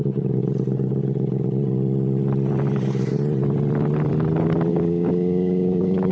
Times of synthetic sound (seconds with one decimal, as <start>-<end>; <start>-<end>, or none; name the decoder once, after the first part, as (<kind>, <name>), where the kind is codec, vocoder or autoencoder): 4.7-6.1 (codec, DAC)